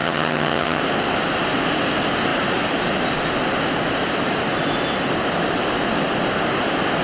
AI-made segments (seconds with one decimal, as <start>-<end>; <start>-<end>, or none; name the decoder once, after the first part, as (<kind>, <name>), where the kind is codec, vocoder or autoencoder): 0.0-0.8 (vocoder, HiFi-GAN)